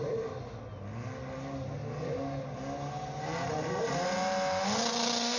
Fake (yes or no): no